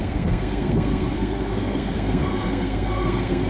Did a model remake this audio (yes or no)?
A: yes